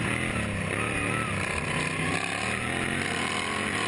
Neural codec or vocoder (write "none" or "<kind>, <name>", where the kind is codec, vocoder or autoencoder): none